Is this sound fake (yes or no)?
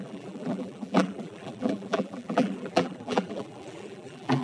yes